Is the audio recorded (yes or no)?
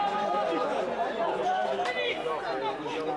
yes